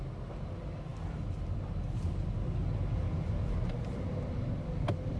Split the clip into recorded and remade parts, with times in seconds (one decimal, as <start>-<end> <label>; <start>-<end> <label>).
0.0-5.2 recorded